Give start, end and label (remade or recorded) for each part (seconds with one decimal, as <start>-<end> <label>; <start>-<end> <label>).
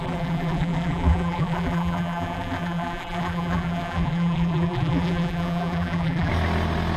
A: 0.0-6.3 remade; 6.3-7.0 recorded